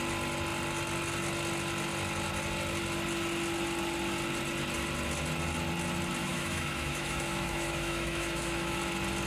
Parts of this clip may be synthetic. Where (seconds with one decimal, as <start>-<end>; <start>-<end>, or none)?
6.2-8.8